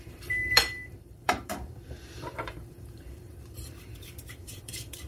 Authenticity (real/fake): fake